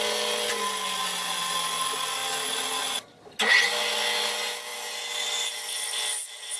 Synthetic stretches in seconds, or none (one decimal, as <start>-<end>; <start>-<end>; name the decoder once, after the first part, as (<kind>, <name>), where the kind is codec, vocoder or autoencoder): none